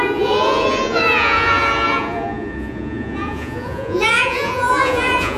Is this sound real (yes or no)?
no